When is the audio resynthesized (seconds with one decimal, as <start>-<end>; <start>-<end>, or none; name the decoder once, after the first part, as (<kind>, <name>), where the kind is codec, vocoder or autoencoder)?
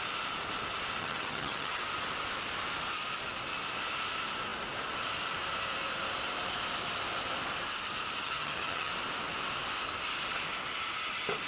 1.0-1.8 (vocoder, HiFi-GAN); 8.2-8.9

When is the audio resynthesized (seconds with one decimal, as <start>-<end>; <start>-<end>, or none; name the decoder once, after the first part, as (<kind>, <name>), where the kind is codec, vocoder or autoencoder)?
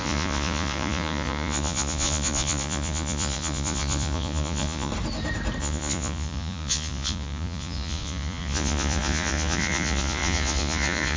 0.0-4.9 (vocoder, Vocos); 5.6-11.2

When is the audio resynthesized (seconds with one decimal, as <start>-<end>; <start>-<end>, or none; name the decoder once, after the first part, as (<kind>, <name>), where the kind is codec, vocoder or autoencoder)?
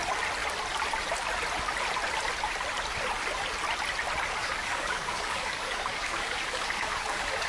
4.4-7.5 (codec, DAC)